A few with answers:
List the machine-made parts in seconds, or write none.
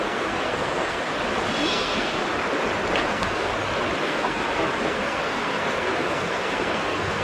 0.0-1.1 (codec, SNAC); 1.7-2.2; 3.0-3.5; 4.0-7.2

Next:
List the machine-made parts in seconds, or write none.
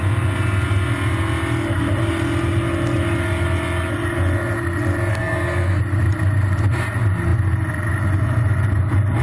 5.1-5.8 (codec, SNAC)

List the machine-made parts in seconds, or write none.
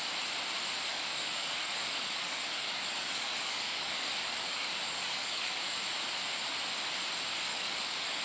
0.9-5.8 (codec, DAC); 7.5-8.2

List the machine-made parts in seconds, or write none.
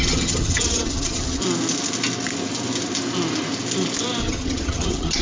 0.0-1.4 (vocoder, HiFi-GAN); 4.2-5.2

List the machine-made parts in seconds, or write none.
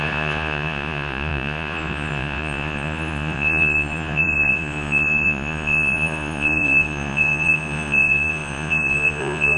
0.0-9.6 (vocoder, Vocos)